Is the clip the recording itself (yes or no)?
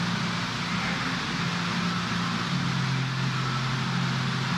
yes